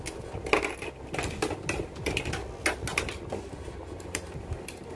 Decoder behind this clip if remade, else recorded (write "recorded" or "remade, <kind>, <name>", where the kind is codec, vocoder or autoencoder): recorded